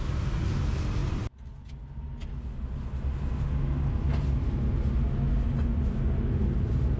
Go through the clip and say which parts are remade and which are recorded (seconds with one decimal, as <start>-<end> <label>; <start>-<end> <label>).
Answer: 0.0-7.0 recorded